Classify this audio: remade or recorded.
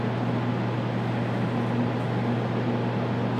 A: recorded